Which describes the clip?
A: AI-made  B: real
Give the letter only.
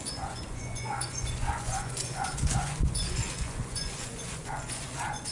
A